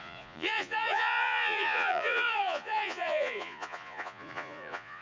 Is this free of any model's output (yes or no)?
no